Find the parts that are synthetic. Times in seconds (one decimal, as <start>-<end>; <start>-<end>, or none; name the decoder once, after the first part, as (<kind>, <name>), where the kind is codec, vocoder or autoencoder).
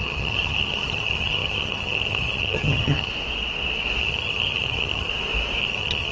0.0-3.1 (vocoder, HiFi-GAN); 4.0-5.1; 5.6-6.1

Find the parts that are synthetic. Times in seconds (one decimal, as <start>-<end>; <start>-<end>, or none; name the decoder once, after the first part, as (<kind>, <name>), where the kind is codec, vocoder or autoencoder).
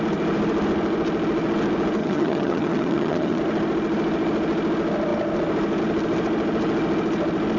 2.0-3.4 (vocoder, HiFi-GAN)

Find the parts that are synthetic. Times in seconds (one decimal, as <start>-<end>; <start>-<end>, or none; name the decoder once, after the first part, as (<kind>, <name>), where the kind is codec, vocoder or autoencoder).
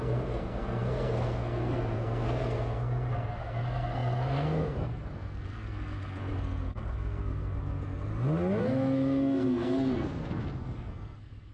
0.0-8.1 (codec, SNAC); 8.6-11.5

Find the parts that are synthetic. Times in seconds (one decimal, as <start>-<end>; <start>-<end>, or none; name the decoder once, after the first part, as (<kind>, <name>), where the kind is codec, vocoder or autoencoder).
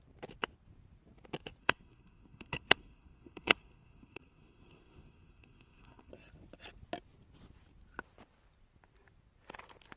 1.6-6.1 (codec, SNAC)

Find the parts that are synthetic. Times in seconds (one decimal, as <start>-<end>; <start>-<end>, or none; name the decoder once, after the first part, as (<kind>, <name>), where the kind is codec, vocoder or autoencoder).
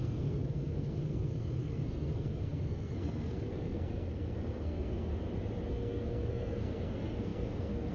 0.0-5.1 (codec, SNAC); 5.7-7.9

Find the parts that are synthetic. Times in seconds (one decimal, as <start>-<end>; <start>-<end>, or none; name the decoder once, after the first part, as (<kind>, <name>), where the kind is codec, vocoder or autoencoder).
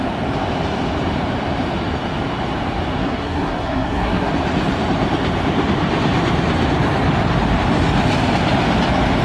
3.0-4.3 (codec, SNAC)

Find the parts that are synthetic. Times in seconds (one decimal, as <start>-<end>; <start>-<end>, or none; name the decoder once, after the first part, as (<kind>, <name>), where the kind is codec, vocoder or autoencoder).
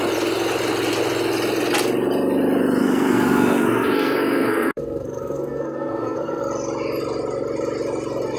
2.8-6.4 (codec, SNAC)